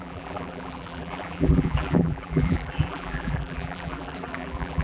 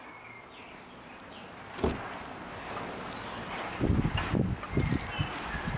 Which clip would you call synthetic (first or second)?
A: first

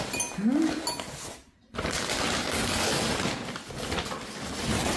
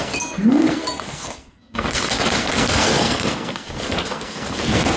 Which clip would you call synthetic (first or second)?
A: second